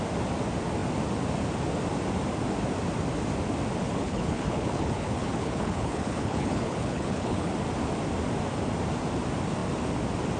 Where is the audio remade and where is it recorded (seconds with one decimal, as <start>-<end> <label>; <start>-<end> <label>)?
0.0-4.0 recorded; 4.0-7.5 remade; 7.5-10.4 recorded